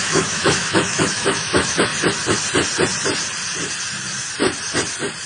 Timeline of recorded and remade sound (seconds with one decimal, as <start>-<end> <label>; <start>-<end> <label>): 0.0-1.9 remade; 1.9-5.3 recorded